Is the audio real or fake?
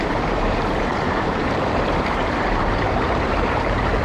fake